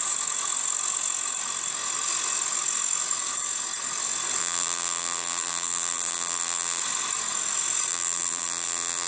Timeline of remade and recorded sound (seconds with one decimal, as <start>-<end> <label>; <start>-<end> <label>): 0.0-4.4 recorded; 4.4-6.8 remade; 6.8-7.9 recorded; 7.9-9.1 remade